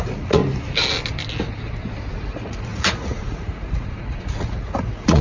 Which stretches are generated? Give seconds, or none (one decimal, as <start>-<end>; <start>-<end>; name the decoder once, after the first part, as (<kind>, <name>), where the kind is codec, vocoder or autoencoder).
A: 0.0-0.4 (vocoder, Vocos); 2.1-5.2